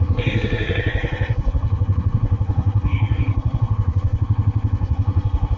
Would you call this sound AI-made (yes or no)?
yes